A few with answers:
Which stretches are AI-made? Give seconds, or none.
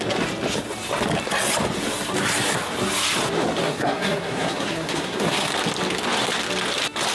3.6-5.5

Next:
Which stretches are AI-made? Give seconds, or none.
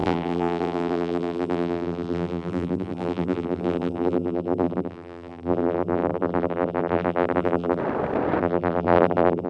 0.0-7.8; 8.4-9.5